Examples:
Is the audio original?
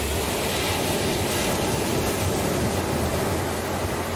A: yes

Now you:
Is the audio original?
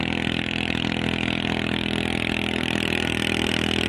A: yes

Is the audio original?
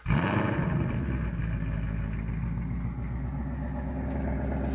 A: yes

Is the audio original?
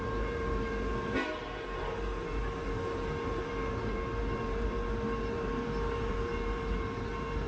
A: no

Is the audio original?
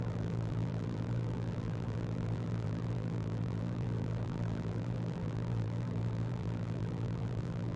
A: no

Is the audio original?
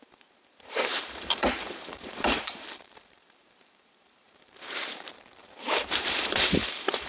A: no